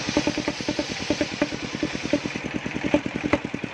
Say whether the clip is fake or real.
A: fake